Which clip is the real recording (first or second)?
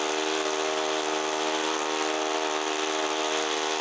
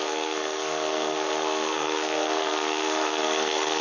first